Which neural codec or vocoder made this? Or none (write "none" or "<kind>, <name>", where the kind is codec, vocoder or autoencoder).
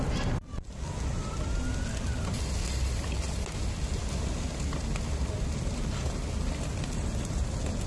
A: none